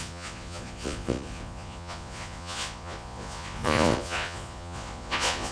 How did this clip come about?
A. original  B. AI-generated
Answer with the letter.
B